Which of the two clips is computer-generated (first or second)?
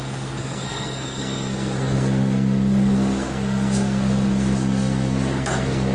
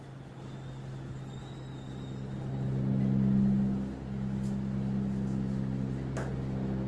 first